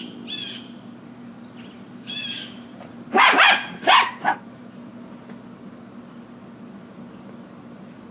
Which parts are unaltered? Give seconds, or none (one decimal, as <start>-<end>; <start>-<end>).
0.0-1.2; 4.7-8.1